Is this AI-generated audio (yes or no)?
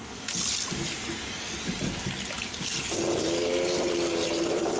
no